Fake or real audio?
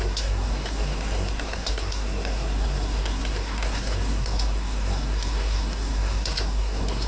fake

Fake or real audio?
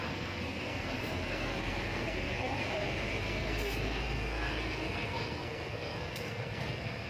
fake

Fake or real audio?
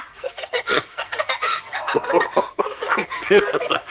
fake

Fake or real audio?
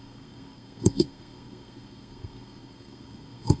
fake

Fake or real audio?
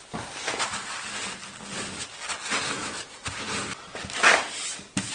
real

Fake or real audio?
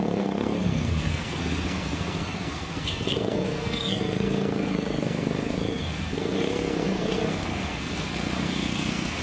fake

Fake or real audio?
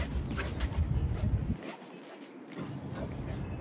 real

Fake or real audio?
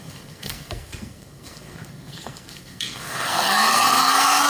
fake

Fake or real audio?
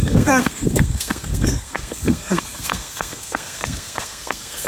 fake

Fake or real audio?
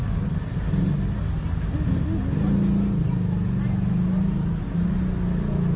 real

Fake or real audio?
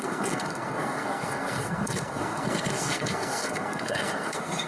fake